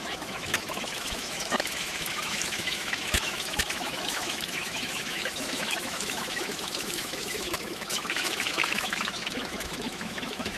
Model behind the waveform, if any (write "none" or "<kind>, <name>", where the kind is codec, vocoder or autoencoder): autoencoder, DAC-VAE